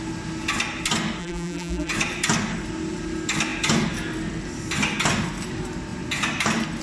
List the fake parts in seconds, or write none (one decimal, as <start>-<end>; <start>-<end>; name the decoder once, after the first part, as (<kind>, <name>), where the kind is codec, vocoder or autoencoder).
1.2-1.9 (vocoder, BigVGAN v2)

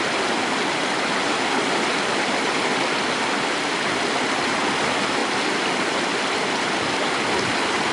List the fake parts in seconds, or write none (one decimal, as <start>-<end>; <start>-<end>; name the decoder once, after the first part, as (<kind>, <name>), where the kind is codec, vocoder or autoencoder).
none

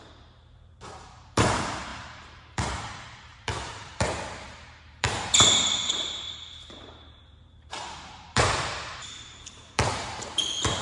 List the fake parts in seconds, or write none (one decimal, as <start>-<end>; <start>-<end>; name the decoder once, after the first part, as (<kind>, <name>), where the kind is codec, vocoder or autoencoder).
0.0-10.8 (vocoder, BigVGAN v2)

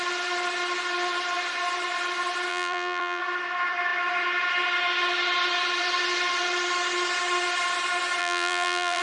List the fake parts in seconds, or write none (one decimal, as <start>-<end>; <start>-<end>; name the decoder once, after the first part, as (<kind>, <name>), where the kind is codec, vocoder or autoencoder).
2.5-3.2 (vocoder, BigVGAN v2); 8.2-9.0

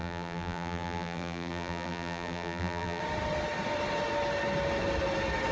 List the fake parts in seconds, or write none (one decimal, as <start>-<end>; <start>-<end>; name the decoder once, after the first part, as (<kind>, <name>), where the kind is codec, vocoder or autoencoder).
0.0-3.0 (vocoder, BigVGAN v2)